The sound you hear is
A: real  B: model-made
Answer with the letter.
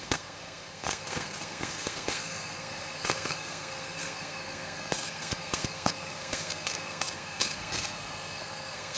B